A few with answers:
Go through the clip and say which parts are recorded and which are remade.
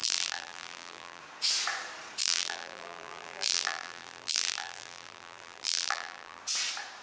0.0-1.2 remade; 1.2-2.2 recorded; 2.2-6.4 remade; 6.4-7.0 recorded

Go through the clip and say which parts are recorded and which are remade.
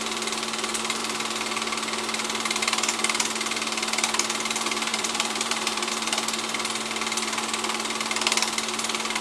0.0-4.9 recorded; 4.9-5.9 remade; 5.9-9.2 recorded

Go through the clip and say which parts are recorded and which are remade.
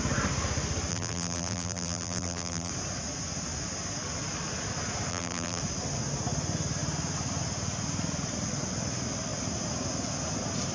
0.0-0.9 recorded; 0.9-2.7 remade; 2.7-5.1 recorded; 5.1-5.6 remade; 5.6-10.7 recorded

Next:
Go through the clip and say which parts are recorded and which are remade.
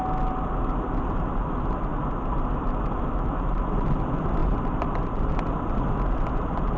0.0-4.4 recorded; 4.4-5.3 remade; 5.3-6.8 recorded